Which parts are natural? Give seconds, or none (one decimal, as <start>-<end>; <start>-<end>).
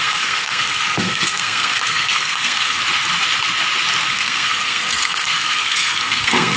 2.8-4.1